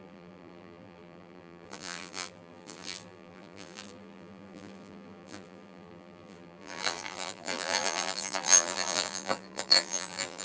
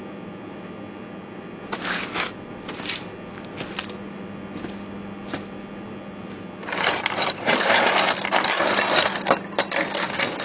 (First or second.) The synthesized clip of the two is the first